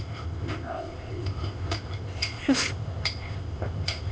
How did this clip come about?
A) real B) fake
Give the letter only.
B